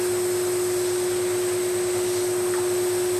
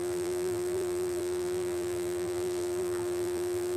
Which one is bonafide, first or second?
first